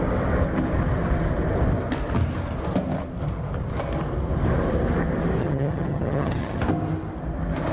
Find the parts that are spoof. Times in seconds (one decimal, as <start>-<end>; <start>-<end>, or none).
5.4-6.6